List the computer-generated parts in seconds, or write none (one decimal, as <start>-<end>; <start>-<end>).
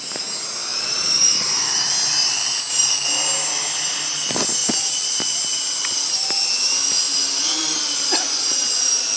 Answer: 0.7-1.9; 7.1-8.7